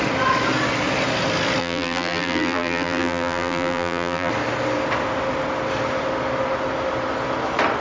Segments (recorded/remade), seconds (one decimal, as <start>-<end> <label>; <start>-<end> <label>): 0.0-1.6 recorded; 1.6-4.3 remade; 4.3-7.8 recorded